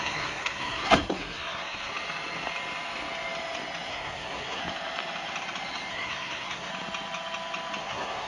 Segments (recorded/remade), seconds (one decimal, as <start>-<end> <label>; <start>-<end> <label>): 0.0-1.9 remade; 1.9-3.9 recorded; 3.9-4.6 remade; 4.6-5.9 recorded; 5.9-6.7 remade; 6.7-7.8 recorded; 7.8-8.3 remade